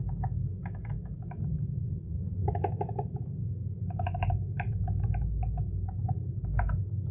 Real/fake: fake